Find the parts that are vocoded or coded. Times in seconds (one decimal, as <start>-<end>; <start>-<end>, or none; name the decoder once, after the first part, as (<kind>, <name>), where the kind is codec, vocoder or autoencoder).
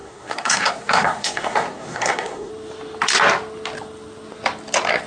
0.0-2.5 (codec, SNAC)